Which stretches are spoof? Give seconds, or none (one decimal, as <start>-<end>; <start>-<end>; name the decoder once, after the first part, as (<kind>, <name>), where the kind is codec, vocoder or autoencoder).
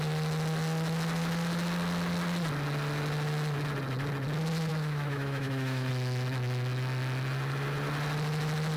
4.7-5.9 (autoencoder, DAC-VAE)